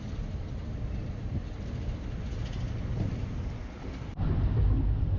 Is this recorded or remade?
recorded